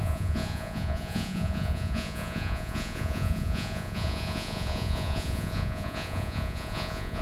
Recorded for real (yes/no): no